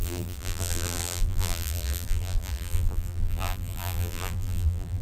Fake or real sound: fake